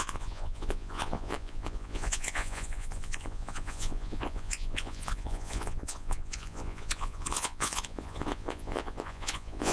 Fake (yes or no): yes